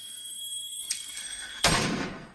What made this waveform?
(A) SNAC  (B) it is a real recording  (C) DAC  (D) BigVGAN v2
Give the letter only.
A